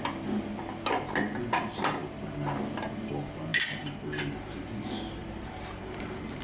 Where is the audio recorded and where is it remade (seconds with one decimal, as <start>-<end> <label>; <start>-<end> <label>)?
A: 0.0-6.4 recorded

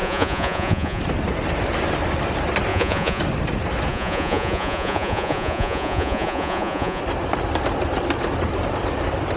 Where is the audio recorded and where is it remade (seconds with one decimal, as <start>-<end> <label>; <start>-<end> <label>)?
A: 0.0-1.0 remade; 1.0-2.7 recorded; 2.7-3.2 remade; 3.2-3.9 recorded; 3.9-7.0 remade; 7.0-9.4 recorded

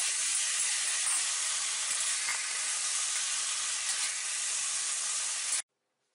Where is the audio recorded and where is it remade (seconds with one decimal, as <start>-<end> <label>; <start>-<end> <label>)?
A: 0.0-6.1 recorded

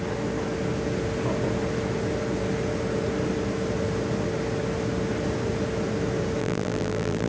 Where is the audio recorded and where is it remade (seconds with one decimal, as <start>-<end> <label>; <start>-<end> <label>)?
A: 0.0-6.4 recorded; 6.4-7.3 remade

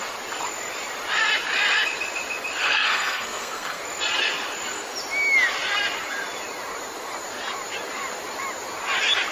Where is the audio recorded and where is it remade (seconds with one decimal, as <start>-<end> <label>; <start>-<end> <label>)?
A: 0.0-2.6 recorded; 2.6-3.8 remade; 3.8-9.3 recorded